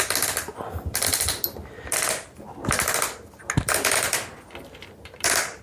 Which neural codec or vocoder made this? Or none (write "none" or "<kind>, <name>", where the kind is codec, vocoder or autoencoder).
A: none